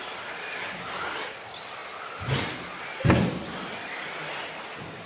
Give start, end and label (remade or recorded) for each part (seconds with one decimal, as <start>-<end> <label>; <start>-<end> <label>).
0.0-5.1 recorded